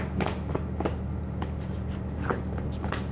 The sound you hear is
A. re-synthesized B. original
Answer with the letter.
B